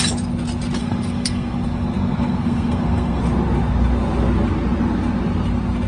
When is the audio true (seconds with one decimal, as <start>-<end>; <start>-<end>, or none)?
0.0-0.8; 3.2-5.9